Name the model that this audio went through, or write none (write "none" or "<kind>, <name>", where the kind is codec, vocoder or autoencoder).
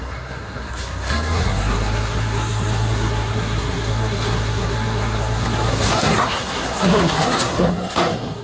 codec, SNAC